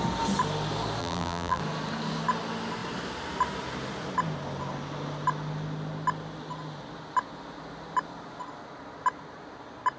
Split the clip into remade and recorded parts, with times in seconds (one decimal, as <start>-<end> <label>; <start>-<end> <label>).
0.0-1.0 recorded; 1.0-1.6 remade; 1.6-10.0 recorded

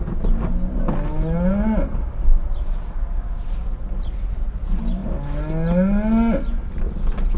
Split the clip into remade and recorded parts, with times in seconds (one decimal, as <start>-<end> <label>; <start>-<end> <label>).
0.0-7.4 recorded